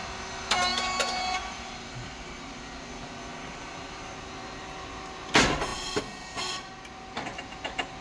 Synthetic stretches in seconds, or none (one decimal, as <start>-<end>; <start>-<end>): none

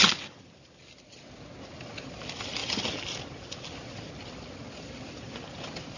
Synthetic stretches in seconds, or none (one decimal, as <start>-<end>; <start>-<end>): none